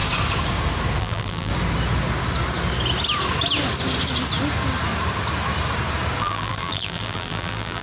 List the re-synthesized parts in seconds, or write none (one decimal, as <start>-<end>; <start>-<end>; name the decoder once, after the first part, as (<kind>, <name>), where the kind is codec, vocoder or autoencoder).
1.0-1.5 (vocoder, BigVGAN v2); 6.2-7.8